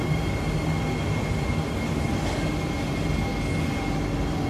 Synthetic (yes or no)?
no